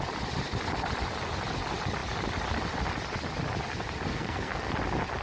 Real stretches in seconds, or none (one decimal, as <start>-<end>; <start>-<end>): 0.0-4.1; 4.7-5.2